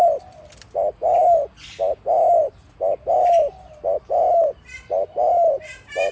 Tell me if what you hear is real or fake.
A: real